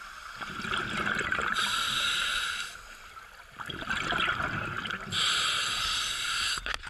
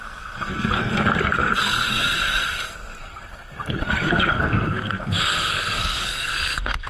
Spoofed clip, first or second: second